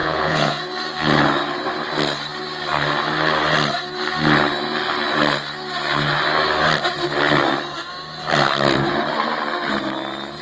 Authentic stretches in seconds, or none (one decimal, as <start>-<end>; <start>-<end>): 0.6-10.4